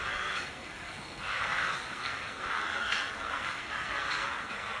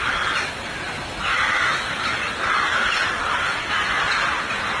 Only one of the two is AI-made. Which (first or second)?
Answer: first